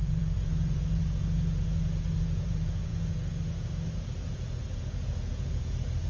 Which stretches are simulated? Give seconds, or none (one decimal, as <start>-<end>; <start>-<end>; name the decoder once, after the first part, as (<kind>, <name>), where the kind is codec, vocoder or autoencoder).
0.0-6.1 (vocoder, Vocos)

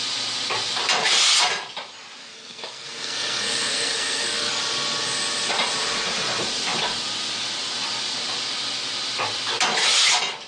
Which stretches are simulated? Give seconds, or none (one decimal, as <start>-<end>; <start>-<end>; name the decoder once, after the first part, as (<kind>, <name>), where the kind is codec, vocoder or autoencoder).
2.2-4.5 (codec, SNAC)

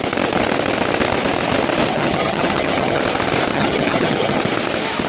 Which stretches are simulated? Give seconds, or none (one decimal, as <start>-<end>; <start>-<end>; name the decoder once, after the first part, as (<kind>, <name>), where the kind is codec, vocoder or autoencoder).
1.9-3.0 (vocoder, HiFi-GAN); 3.5-4.4

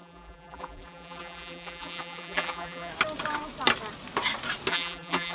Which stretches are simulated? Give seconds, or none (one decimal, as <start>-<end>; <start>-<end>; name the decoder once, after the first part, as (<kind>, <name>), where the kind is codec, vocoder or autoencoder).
0.0-2.9 (vocoder, BigVGAN v2); 4.7-5.3